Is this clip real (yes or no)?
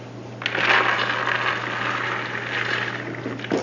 yes